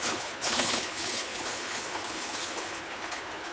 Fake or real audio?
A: fake